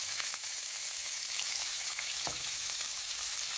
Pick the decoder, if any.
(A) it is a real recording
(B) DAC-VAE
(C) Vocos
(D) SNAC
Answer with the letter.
B